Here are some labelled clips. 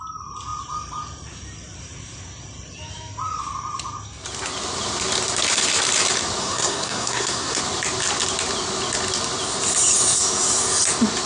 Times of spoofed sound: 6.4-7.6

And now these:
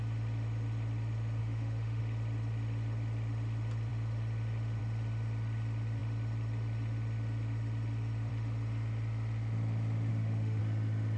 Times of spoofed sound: 1.4-2.0; 10.1-10.6

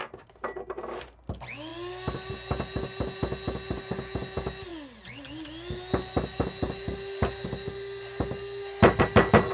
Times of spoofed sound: none

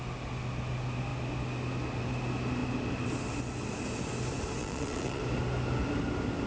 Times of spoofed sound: 4.6-5.2

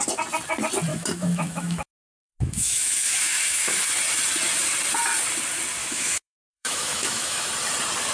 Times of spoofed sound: 0.9-3.8; 5.8-7.5